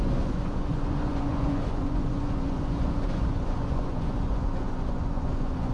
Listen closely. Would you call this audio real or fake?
fake